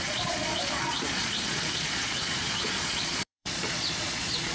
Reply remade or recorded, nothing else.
remade